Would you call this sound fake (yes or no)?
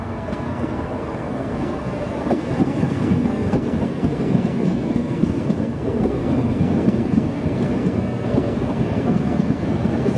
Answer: yes